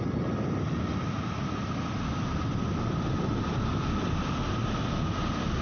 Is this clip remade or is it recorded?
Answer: recorded